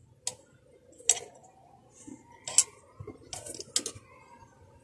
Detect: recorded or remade recorded